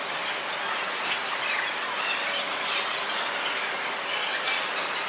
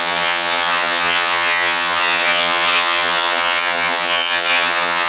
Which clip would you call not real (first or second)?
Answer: second